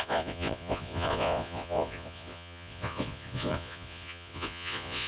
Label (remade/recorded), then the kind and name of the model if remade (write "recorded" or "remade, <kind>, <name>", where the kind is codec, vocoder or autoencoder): remade, vocoder, Vocos